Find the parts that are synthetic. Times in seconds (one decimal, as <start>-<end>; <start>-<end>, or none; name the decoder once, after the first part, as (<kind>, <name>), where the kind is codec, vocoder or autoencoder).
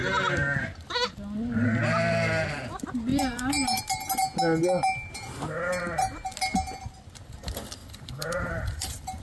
3.1-3.8 (vocoder, BigVGAN v2); 7.8-9.2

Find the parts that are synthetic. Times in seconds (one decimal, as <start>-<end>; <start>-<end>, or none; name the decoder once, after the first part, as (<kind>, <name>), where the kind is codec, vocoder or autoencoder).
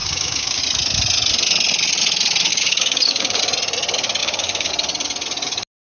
0.0-0.6 (codec, DAC); 2.5-3.4; 4.2-4.7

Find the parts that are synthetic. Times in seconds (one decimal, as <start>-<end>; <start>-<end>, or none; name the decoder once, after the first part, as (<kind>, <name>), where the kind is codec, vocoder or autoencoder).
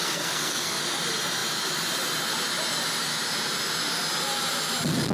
0.0-0.8 (codec, SNAC)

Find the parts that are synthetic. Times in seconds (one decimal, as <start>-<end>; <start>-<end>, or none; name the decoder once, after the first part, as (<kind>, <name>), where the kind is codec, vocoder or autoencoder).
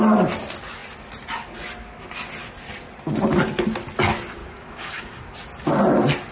4.4-5.2 (codec, DAC)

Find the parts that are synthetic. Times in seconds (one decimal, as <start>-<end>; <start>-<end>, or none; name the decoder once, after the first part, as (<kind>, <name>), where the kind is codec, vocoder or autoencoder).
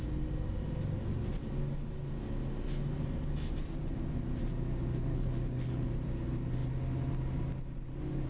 5.1-5.9 (codec, HILCodec)